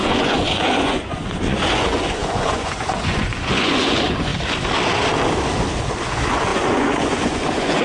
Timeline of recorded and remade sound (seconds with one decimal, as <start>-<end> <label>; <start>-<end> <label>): 0.0-4.3 remade; 4.3-6.1 recorded; 6.1-7.8 remade